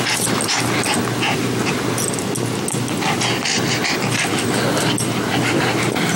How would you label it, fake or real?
real